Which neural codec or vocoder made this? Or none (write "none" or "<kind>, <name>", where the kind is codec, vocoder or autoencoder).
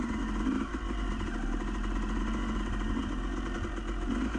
none